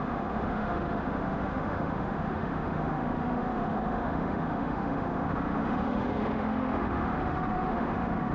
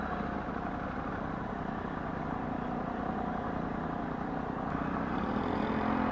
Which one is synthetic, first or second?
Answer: first